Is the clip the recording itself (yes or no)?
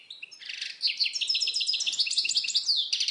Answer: yes